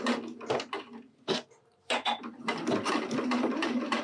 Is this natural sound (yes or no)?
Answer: yes